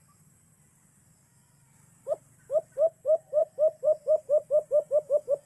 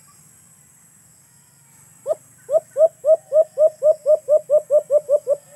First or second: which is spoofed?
first